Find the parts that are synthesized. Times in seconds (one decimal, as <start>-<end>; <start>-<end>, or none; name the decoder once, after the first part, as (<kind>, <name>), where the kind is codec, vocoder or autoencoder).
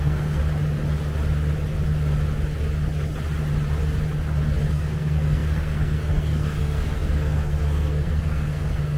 0.0-0.4 (codec, SNAC); 4.7-9.0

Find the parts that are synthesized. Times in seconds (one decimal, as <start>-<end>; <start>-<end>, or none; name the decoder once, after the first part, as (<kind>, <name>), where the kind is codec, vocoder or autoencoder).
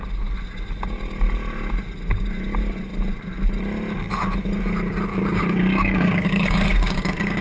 5.1-7.4 (codec, DAC)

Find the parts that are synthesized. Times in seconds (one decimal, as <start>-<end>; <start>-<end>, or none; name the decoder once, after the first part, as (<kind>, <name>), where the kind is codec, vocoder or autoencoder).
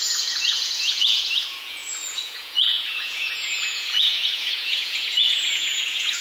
0.0-6.2 (vocoder, Vocos)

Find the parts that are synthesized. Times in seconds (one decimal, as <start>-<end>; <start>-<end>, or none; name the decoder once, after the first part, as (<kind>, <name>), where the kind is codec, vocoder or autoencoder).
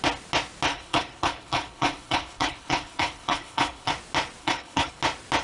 0.7-3.9 (codec, HILCodec); 4.4-5.0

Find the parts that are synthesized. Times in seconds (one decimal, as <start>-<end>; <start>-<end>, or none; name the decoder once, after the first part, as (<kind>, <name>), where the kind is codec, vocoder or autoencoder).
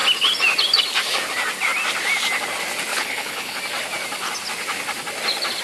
2.9-3.6 (codec, HILCodec)